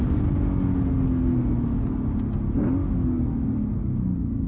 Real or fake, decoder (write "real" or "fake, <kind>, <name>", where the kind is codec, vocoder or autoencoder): real